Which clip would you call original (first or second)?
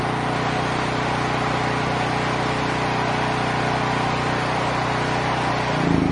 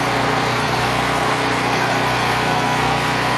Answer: first